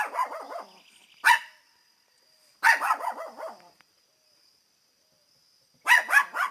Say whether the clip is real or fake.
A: real